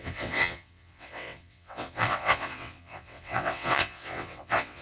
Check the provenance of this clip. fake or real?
fake